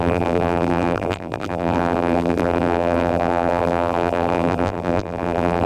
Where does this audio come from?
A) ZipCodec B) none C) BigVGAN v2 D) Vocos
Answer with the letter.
C